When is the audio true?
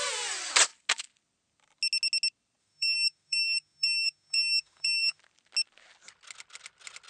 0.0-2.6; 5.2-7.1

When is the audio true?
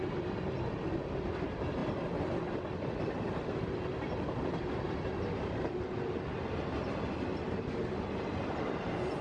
0.0-9.2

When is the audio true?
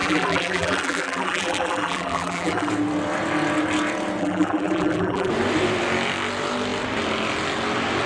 2.7-4.2; 5.3-8.1